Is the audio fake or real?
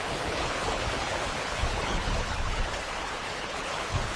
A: fake